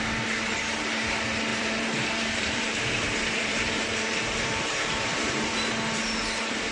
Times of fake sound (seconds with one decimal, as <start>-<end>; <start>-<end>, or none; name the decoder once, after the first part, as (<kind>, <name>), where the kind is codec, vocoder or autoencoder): 1.5-5.5 (vocoder, BigVGAN v2)